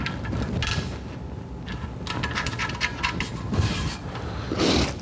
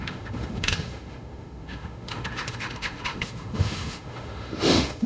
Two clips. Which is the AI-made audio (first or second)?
second